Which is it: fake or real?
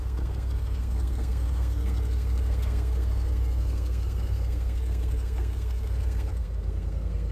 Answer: fake